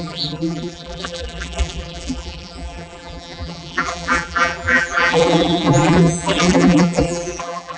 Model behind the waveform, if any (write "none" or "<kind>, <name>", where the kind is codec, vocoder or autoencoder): vocoder, BigVGAN v2